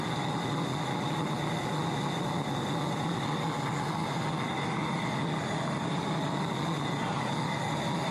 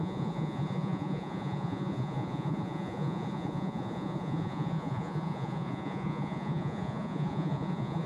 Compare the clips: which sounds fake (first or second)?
second